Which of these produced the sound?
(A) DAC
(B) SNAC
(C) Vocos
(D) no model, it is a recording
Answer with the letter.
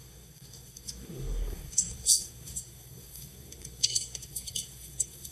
B